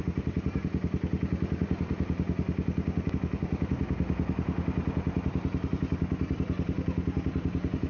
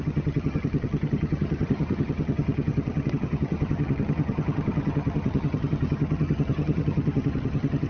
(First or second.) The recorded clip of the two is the first